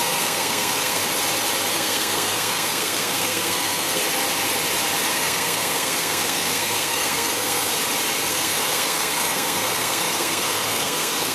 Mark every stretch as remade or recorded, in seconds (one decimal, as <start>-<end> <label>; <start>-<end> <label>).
0.0-1.0 remade; 1.0-1.7 recorded; 1.7-4.0 remade; 4.0-5.1 recorded; 5.1-7.7 remade; 7.7-8.3 recorded; 8.3-11.3 remade